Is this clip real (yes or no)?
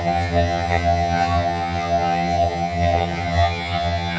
no